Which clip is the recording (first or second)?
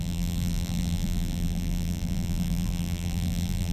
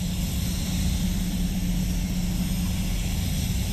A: second